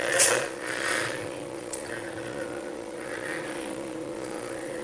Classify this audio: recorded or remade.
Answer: remade